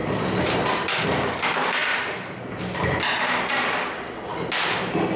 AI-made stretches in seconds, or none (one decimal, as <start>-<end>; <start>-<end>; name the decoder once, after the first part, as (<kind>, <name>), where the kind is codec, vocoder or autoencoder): none